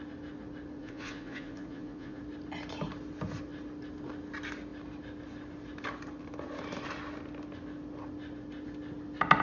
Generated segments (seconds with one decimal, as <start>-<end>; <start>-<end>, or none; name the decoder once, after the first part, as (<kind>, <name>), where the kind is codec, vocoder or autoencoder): 0.8-2.2 (vocoder, Vocos)